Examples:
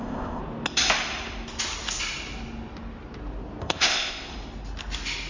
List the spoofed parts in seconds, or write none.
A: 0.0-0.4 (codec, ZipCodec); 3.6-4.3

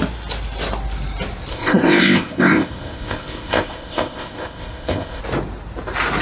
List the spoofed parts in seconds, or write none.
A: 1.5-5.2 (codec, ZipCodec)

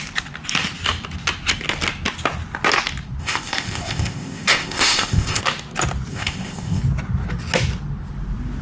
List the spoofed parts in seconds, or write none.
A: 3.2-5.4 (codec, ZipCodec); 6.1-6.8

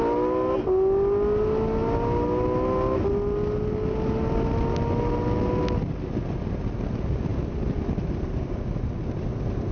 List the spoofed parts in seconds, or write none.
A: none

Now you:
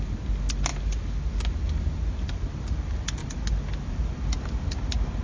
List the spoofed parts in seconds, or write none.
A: none

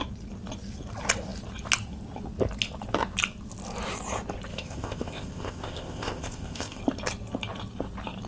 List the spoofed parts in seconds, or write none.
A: 4.5-6.8 (codec, ZipCodec)